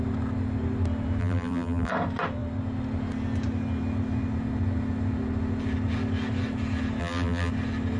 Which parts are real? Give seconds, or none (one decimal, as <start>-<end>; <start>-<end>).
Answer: 0.0-1.2; 1.9-7.0; 7.5-8.0